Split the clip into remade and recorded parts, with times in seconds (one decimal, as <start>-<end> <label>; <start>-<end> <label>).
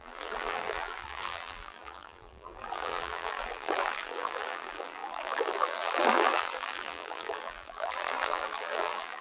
0.0-9.2 remade